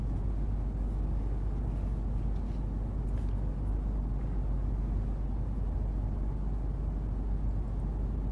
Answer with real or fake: real